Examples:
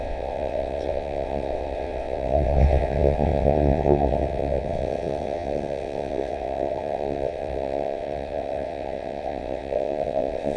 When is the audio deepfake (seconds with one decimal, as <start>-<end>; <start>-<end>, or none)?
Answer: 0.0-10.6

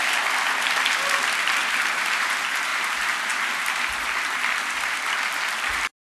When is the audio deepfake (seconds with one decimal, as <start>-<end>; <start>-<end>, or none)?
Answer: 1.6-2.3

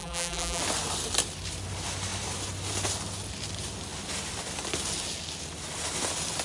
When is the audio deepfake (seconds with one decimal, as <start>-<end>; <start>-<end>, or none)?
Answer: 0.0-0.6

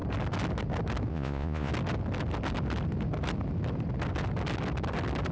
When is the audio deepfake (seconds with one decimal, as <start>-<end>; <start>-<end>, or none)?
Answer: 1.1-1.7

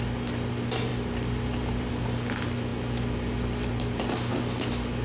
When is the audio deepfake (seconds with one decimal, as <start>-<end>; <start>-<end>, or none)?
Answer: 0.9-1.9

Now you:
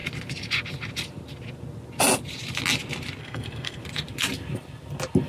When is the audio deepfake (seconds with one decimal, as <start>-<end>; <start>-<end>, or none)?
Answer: 3.2-3.8

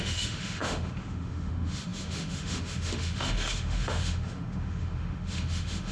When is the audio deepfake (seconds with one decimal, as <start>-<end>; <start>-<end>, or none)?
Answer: 0.0-5.9